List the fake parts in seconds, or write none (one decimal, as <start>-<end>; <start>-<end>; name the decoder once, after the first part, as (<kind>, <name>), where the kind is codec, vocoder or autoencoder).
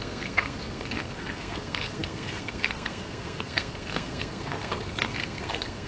0.0-5.9 (codec, SNAC)